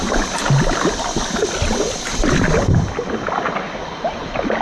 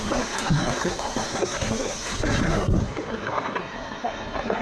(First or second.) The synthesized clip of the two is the second